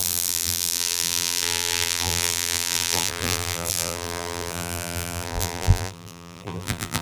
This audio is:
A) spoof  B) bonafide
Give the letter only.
A